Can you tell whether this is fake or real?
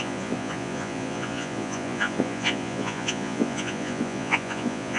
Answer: fake